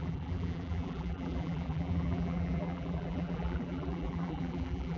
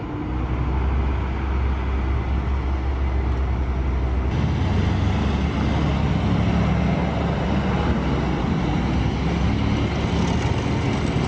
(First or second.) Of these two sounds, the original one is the second